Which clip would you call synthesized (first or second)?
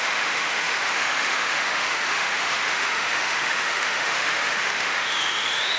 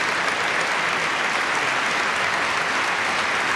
first